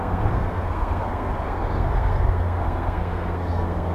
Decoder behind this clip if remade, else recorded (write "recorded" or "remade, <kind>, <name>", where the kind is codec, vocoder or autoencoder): remade, codec, SNAC